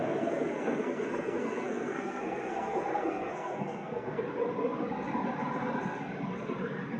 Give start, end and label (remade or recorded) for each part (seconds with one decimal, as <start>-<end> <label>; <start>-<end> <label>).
0.0-4.2 remade; 4.2-7.0 recorded